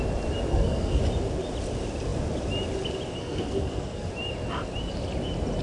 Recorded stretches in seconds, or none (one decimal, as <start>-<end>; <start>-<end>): 0.0-0.5; 1.0-3.2; 4.1-5.6

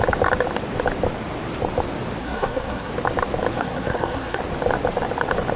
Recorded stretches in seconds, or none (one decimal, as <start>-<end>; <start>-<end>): 0.0-2.2; 2.9-3.5; 4.4-5.6

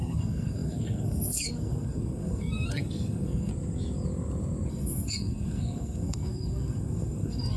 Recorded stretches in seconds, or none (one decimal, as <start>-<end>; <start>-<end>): 3.5-4.7

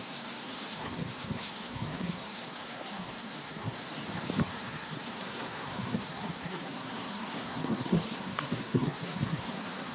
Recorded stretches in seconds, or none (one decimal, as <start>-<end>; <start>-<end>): 3.9-4.4

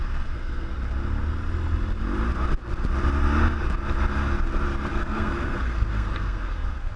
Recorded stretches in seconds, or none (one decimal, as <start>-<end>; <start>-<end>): 0.7-4.9

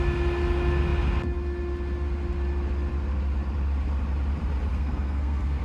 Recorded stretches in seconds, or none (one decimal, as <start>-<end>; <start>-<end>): 0.0-4.7